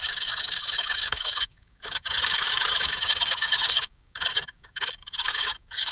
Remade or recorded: remade